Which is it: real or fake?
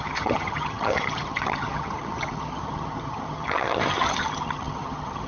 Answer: fake